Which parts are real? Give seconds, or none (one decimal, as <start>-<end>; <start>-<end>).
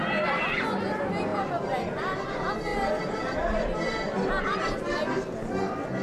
0.0-6.0